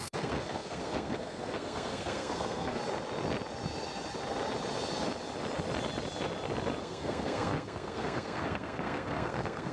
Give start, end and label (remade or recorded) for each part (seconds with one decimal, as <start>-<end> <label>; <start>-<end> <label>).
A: 0.0-2.8 remade; 2.8-6.8 recorded; 6.8-9.7 remade